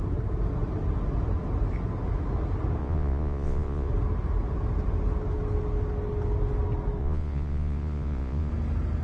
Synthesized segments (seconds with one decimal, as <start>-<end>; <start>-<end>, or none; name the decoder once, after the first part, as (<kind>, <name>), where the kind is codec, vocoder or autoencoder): 2.8-3.9 (vocoder, Vocos); 7.0-8.5